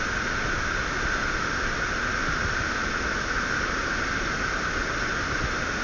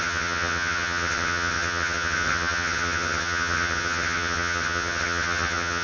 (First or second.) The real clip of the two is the first